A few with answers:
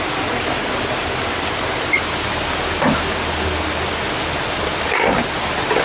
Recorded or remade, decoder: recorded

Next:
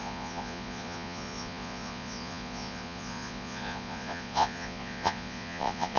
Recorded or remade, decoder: remade, vocoder, Vocos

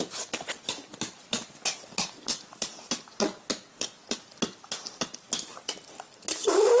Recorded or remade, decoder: recorded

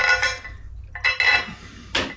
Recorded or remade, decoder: recorded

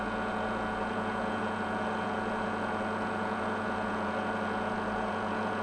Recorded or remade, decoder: remade, vocoder, Vocos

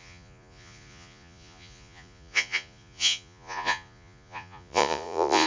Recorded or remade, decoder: remade, vocoder, Vocos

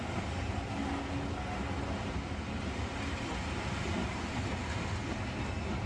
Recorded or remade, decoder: recorded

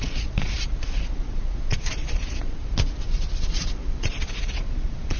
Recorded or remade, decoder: remade, vocoder, Vocos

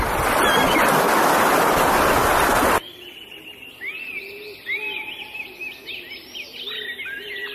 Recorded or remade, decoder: recorded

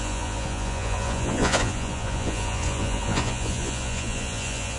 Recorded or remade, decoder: remade, vocoder, Vocos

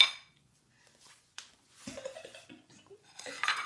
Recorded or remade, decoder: remade, vocoder, Vocos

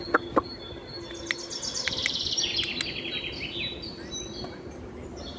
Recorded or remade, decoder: recorded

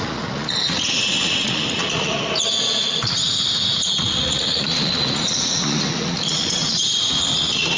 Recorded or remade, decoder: remade, vocoder, Vocos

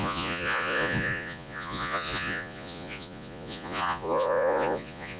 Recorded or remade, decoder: remade, vocoder, Vocos